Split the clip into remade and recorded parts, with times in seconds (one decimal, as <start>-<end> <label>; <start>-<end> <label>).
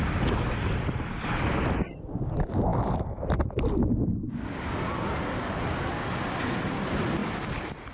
0.0-7.9 recorded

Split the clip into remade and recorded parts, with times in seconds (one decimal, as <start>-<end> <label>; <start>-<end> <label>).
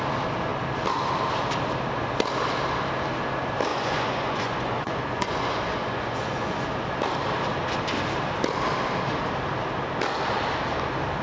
0.0-3.7 recorded; 3.7-6.6 remade; 6.6-11.2 recorded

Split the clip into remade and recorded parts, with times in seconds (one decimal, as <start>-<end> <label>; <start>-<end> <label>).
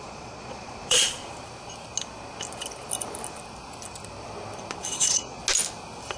0.0-1.2 remade; 1.2-4.9 recorded; 4.9-5.4 remade; 5.4-6.2 recorded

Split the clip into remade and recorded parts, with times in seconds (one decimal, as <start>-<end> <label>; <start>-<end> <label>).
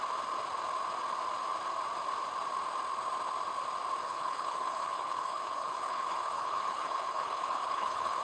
0.0-4.0 recorded; 4.0-8.2 remade